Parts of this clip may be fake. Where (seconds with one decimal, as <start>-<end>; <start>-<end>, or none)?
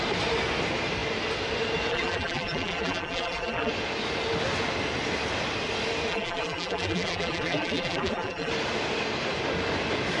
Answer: 1.9-3.7; 6.1-8.5